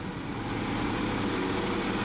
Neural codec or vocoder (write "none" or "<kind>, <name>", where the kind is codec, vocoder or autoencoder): none